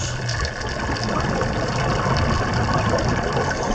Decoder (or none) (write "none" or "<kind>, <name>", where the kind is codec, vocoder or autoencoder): none